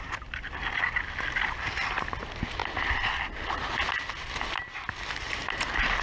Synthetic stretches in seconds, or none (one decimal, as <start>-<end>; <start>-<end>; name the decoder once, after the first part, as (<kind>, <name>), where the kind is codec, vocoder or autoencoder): none